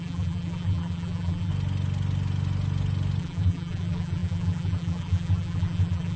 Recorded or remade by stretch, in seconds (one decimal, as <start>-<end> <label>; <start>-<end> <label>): 0.0-1.5 remade; 1.5-3.2 recorded; 3.2-6.2 remade